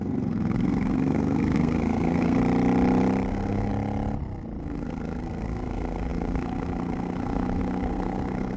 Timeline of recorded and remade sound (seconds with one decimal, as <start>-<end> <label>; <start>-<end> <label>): 0.0-2.4 remade; 2.4-3.3 recorded; 3.3-3.7 remade; 3.7-4.6 recorded; 4.6-8.6 remade